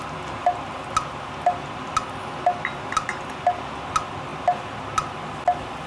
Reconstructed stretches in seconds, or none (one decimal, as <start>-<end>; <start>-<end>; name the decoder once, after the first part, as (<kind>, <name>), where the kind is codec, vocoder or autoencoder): none